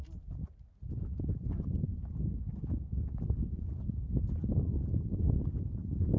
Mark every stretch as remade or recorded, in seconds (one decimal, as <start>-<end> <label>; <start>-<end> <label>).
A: 0.0-6.2 recorded